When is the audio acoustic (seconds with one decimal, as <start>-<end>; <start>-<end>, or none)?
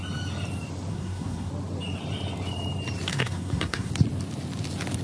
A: 0.0-0.9; 1.5-3.1; 3.9-5.0